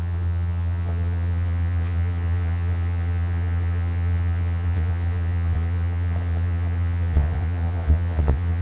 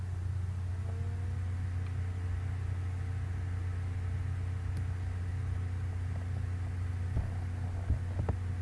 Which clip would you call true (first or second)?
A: second